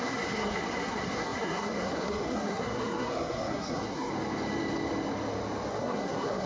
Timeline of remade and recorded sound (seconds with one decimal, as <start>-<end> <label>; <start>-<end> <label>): 0.0-4.1 remade; 4.1-5.7 recorded; 5.7-6.5 remade